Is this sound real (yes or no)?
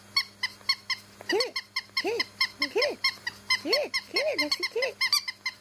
yes